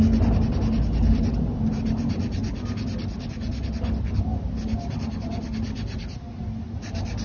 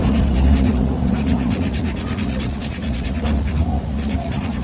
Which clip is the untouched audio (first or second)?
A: first